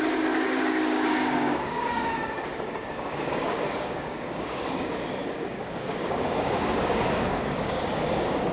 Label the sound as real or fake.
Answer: fake